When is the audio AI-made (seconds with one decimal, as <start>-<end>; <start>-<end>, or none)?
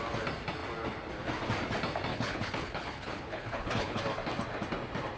2.1-4.0